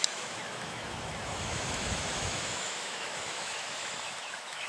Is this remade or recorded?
remade